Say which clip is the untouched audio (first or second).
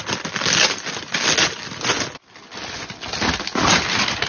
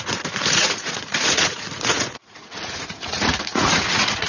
first